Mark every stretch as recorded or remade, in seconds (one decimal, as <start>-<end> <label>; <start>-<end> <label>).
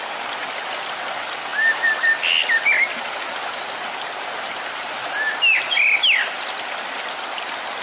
0.0-7.8 recorded